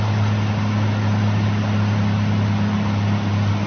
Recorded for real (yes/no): yes